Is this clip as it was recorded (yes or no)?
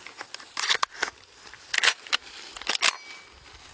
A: yes